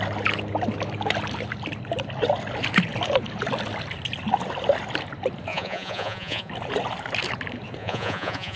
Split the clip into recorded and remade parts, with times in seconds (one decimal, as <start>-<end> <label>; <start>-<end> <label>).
0.0-5.5 recorded; 5.5-6.5 remade; 6.5-7.8 recorded; 7.8-8.6 remade